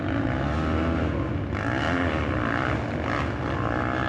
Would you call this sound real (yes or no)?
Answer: yes